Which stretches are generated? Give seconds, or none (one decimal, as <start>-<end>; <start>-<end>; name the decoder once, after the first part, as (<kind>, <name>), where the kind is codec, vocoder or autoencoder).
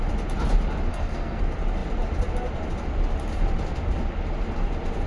0.9-1.4 (codec, SNAC)